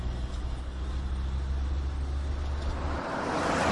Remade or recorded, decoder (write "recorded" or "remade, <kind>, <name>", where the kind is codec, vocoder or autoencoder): recorded